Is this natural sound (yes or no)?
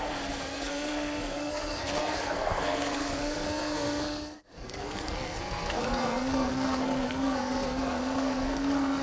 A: no